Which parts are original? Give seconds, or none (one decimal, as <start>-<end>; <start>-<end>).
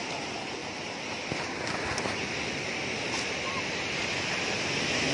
0.0-5.1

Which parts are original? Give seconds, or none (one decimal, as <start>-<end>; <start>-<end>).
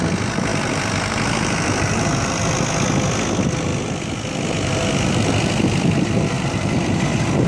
0.0-0.5; 2.7-3.7; 7.0-7.5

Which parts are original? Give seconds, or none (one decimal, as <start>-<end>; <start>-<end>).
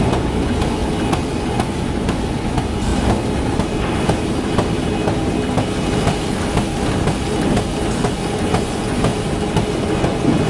0.8-1.3; 2.9-7.9; 9.1-9.7